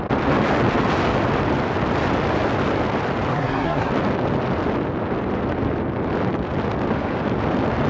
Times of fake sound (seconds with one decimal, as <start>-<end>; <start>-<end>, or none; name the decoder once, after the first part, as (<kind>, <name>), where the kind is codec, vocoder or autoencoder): 3.3-3.9 (codec, SNAC)